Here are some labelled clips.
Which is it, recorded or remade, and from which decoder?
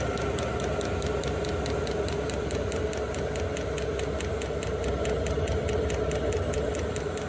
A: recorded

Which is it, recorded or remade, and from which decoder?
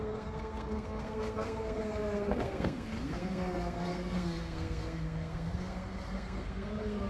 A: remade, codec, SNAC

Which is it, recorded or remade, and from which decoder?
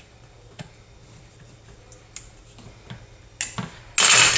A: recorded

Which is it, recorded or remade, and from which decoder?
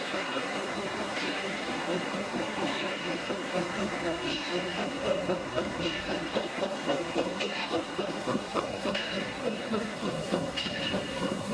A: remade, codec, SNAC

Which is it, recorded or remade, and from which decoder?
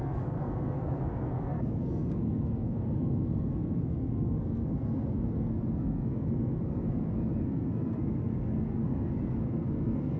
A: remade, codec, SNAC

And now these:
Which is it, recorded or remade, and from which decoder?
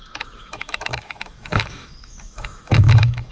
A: remade, autoencoder, DAC-VAE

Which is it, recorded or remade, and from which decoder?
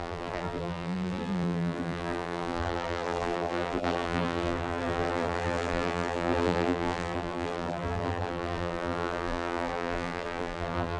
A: remade, vocoder, BigVGAN v2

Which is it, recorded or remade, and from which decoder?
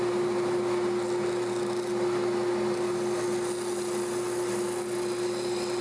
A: recorded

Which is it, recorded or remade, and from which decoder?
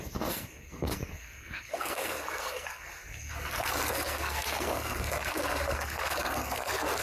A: remade, codec, SNAC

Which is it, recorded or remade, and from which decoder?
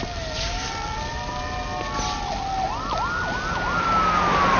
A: recorded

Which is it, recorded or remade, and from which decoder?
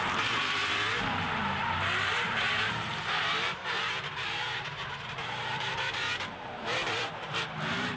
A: remade, vocoder, BigVGAN v2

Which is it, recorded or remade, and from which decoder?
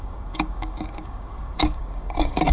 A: remade, codec, DAC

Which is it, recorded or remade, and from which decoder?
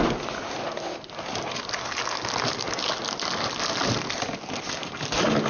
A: recorded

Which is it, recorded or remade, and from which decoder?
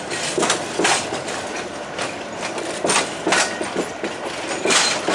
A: recorded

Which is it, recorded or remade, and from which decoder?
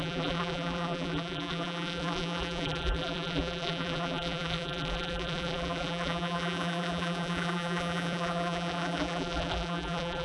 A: remade, vocoder, BigVGAN v2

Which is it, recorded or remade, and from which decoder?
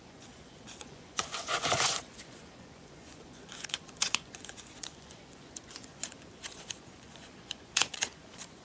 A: remade, vocoder, Vocos